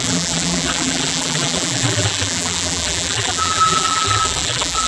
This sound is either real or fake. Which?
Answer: fake